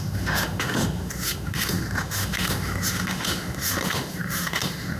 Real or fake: fake